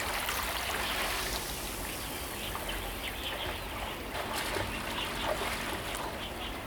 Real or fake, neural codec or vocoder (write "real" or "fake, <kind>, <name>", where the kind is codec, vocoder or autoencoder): real